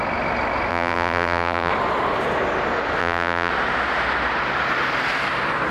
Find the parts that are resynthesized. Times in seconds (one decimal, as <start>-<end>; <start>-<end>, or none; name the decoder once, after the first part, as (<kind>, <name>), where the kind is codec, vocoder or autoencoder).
0.7-1.7 (vocoder, BigVGAN v2); 3.0-3.5